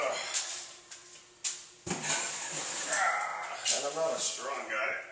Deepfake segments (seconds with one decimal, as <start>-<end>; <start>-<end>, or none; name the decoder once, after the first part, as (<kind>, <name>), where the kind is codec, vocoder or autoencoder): 0.0-1.0 (vocoder, BigVGAN v2); 2.8-3.3; 4.5-5.1